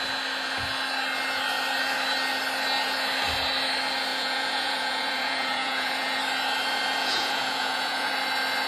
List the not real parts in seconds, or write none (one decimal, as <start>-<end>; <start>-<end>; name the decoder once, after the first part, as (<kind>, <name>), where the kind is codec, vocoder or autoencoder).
4.1-6.2 (vocoder, Vocos); 7.0-8.1